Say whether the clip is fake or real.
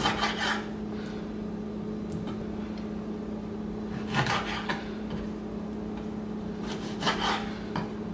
real